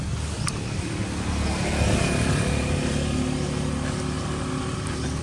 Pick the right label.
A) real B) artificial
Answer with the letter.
A